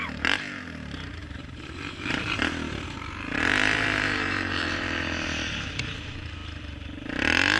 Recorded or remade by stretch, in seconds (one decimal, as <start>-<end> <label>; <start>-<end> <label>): 0.0-6.4 remade; 6.4-7.6 recorded